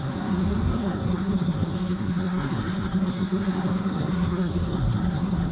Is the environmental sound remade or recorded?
remade